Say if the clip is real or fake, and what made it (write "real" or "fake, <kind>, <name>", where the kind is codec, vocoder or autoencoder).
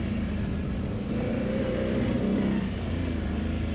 real